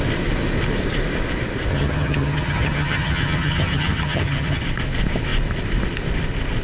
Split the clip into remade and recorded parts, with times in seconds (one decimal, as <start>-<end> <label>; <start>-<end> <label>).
0.0-1.7 recorded; 1.7-4.6 remade; 4.6-6.6 recorded